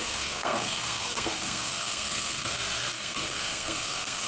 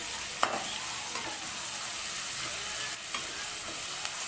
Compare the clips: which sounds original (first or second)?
second